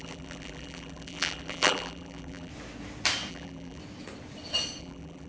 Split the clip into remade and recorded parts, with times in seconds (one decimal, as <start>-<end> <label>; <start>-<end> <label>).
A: 0.0-2.5 remade; 2.5-3.3 recorded; 3.3-3.8 remade; 3.8-4.8 recorded; 4.8-5.3 remade

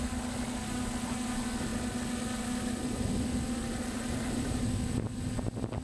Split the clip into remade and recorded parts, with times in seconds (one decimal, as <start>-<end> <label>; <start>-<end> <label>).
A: 0.0-3.6 recorded; 3.6-4.6 remade; 4.6-5.8 recorded

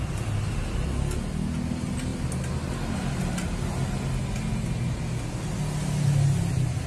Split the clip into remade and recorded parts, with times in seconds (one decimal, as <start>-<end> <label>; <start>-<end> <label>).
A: 0.0-6.9 recorded

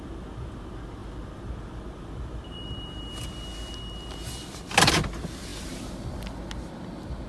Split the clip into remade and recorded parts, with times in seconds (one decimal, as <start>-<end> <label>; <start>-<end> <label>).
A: 0.0-7.3 recorded

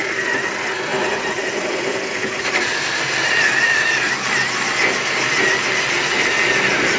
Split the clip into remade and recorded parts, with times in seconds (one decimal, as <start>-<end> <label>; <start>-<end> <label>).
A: 0.0-0.9 recorded; 0.9-2.4 remade; 2.4-7.0 recorded

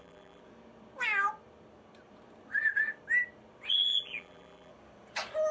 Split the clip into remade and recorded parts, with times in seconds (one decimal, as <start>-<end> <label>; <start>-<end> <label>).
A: 0.0-0.4 remade; 0.4-3.7 recorded; 3.7-4.7 remade; 4.7-5.5 recorded

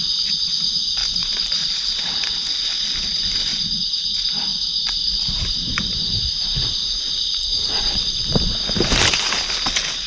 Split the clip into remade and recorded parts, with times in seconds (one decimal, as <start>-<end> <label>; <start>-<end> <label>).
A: 0.0-1.0 recorded; 1.0-1.7 remade; 1.7-3.5 recorded; 3.5-4.1 remade; 4.1-4.5 recorded; 4.5-8.5 remade; 8.5-10.1 recorded